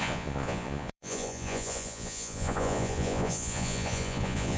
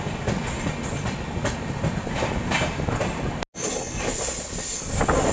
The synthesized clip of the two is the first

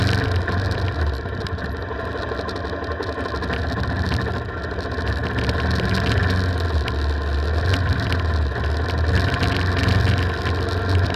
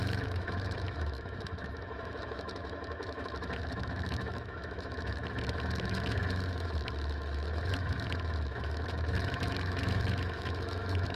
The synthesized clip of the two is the second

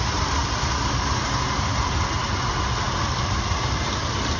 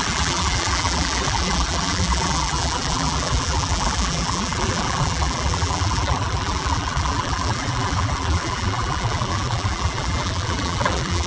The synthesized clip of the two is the second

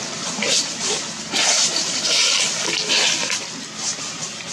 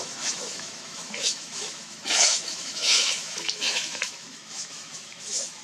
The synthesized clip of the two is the second